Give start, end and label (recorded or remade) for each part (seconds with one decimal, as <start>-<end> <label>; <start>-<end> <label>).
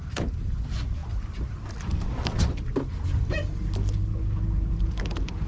0.0-5.5 recorded